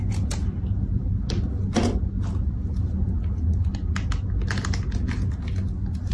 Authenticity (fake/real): real